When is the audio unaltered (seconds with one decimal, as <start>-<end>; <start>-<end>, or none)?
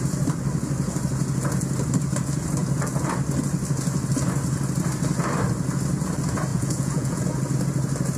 0.0-6.5; 7.2-8.2